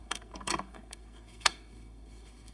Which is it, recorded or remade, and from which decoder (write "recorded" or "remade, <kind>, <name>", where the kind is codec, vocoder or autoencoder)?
remade, codec, SNAC